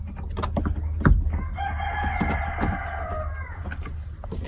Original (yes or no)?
yes